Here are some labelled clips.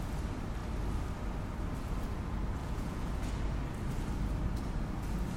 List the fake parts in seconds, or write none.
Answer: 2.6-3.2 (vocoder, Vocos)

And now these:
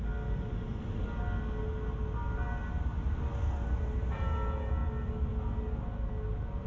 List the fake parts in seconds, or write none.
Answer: none

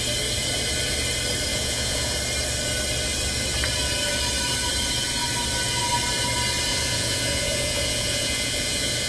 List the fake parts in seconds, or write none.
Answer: 1.5-2.1 (vocoder, Vocos); 6.7-9.1

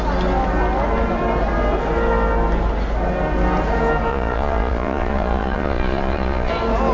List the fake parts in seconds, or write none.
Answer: 4.1-6.5 (vocoder, Vocos)

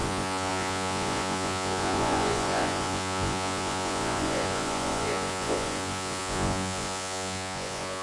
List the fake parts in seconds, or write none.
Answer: 0.0-8.0 (vocoder, Vocos)

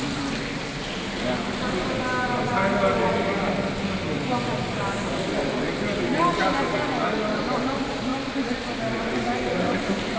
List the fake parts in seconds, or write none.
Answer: none

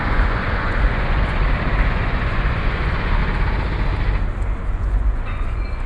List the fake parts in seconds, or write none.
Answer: 0.0-1.4 (vocoder, Vocos); 1.9-3.2; 4.7-5.9